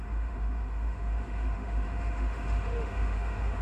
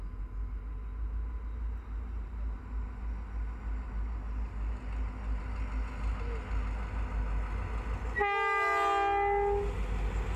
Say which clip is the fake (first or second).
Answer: first